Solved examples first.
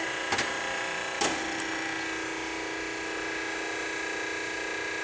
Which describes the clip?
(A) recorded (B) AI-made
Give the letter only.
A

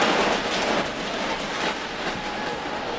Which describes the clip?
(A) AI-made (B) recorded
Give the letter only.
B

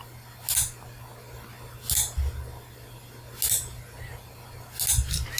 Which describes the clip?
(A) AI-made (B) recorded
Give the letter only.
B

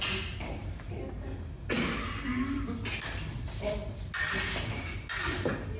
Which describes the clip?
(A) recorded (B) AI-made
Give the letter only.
A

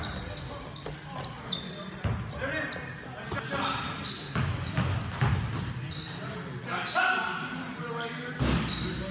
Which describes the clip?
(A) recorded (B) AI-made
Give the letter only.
A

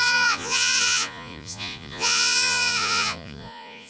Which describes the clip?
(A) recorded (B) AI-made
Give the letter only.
B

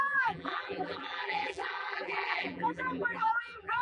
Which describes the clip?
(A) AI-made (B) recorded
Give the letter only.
A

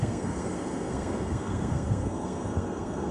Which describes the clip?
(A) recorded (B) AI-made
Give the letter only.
B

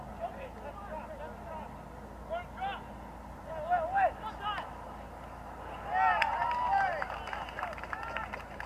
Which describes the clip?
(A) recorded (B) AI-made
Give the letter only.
A